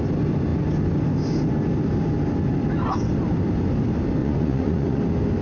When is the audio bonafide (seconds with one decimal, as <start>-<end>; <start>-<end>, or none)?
0.0-4.2; 5.0-5.4